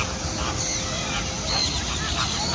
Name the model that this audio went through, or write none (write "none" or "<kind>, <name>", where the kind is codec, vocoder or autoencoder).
none